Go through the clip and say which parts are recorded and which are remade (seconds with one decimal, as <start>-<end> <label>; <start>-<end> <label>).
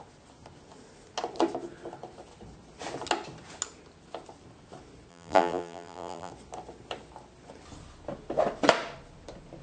0.0-5.1 recorded; 5.1-6.3 remade; 6.3-9.6 recorded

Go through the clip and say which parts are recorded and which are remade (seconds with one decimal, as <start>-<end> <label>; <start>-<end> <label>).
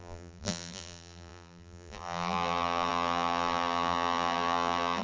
0.0-5.0 remade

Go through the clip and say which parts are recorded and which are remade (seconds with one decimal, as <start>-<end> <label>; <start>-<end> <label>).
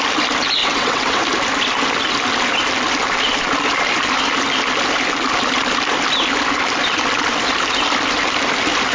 0.0-0.6 recorded; 0.6-1.2 remade; 1.2-8.9 recorded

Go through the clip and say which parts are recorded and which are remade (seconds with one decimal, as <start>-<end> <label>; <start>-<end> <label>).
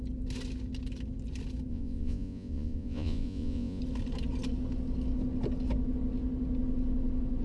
0.0-1.7 recorded; 1.7-3.8 remade; 3.8-7.4 recorded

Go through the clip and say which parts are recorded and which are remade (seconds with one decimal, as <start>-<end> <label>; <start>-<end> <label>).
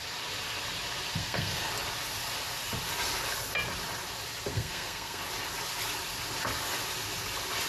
0.0-1.2 recorded; 1.2-1.7 remade; 1.7-4.5 recorded; 4.5-5.2 remade; 5.2-7.7 recorded